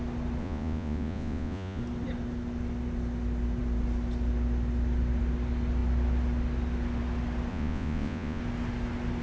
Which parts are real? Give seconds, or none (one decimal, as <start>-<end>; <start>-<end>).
0.0-0.4; 1.8-7.5; 8.4-9.2